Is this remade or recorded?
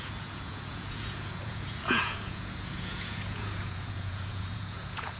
remade